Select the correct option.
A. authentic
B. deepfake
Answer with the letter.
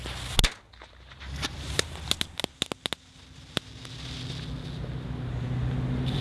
A